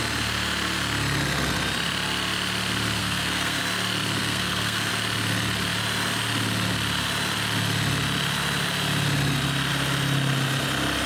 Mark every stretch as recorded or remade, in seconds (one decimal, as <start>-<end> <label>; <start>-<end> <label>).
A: 0.0-3.0 recorded; 3.0-3.6 remade; 3.6-4.2 recorded; 4.2-4.9 remade; 4.9-11.1 recorded